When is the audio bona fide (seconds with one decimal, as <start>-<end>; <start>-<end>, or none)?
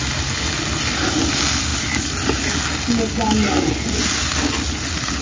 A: 0.0-5.2